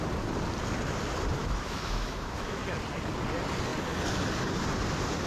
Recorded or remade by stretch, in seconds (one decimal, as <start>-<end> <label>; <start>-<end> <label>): 0.0-1.4 recorded; 1.4-2.6 remade; 2.6-5.3 recorded